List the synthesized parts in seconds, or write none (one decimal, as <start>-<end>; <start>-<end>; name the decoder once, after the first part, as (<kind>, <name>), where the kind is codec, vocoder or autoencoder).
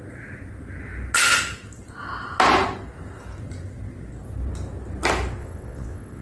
5.4-6.2 (vocoder, WaveNeXt)